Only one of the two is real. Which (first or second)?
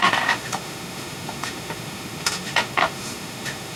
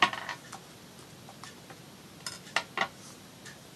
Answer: second